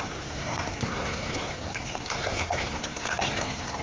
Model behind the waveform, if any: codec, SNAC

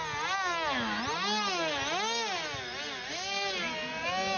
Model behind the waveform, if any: none